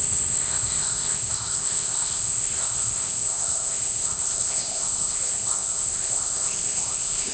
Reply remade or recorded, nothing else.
remade